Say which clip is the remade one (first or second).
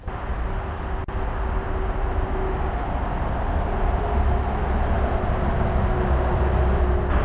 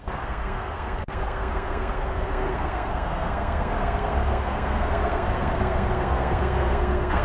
second